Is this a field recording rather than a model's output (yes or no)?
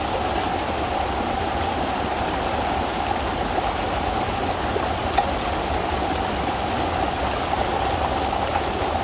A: yes